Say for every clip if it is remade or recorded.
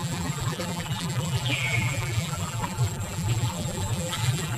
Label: remade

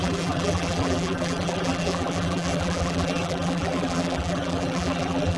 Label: remade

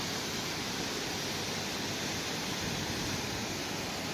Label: recorded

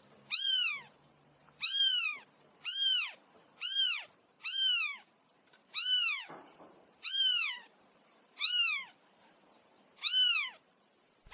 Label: remade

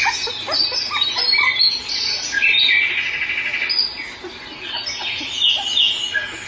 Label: recorded